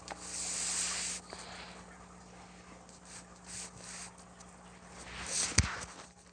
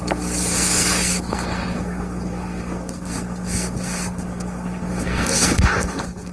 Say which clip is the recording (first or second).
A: first